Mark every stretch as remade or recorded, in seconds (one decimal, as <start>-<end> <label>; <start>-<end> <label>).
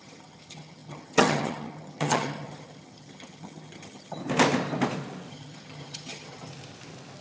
0.0-4.2 remade; 4.2-5.3 recorded; 5.3-6.5 remade; 6.5-7.2 recorded